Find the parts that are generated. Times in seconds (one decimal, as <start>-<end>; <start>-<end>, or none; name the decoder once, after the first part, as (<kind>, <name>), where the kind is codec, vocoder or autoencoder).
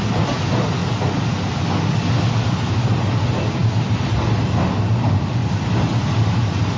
none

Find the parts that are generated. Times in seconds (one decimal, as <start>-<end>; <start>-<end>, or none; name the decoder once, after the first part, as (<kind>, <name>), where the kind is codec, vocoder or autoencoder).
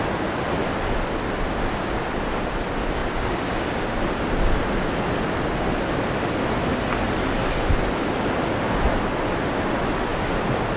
none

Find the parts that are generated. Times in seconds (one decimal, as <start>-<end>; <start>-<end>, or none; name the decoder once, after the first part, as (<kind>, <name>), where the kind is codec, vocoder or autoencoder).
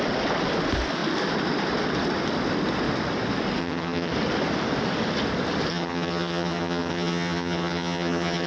3.6-4.1 (vocoder, HiFi-GAN); 5.7-8.5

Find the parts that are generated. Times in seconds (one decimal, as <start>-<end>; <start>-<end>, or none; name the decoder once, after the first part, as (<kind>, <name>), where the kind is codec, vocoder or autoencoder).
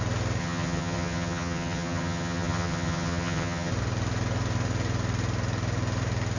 0.4-3.7 (vocoder, HiFi-GAN)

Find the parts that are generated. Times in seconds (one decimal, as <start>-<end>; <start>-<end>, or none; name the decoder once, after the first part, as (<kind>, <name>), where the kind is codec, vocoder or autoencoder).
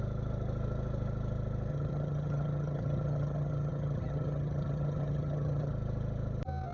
1.7-5.7 (vocoder, HiFi-GAN)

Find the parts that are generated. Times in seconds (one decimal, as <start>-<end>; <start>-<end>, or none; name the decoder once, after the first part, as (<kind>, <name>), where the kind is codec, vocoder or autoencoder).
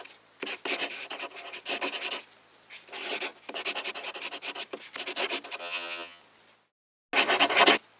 5.6-6.2 (vocoder, HiFi-GAN)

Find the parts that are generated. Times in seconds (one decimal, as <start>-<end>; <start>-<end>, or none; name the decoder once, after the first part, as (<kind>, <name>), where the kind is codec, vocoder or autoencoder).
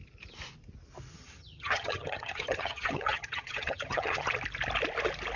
1.1-4.3 (vocoder, HiFi-GAN)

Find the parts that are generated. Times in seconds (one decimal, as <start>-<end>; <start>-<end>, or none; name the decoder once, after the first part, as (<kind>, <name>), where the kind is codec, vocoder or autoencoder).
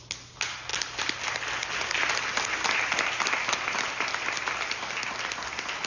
none